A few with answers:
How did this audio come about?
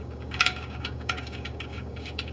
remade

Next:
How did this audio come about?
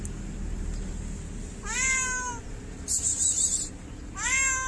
recorded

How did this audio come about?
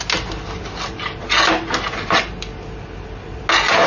recorded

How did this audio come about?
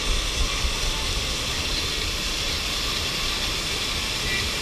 recorded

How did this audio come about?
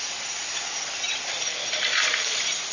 recorded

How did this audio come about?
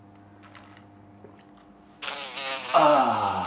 recorded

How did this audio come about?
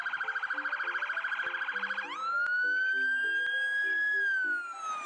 recorded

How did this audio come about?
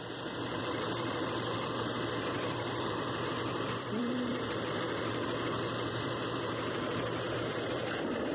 remade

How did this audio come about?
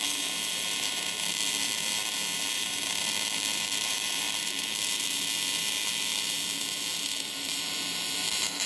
remade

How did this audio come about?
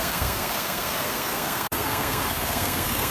remade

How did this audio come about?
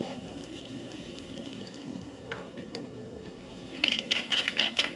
remade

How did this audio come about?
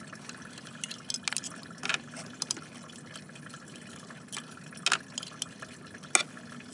recorded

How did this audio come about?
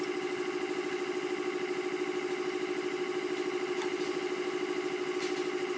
recorded